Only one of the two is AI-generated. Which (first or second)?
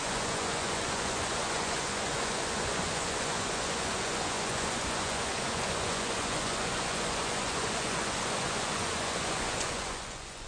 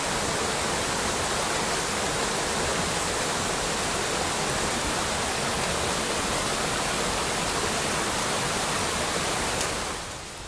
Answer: first